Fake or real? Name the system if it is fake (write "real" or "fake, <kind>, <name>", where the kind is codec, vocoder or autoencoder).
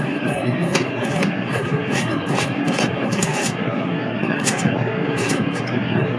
fake, codec, SNAC